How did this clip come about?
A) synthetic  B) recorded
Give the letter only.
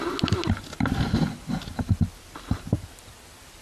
B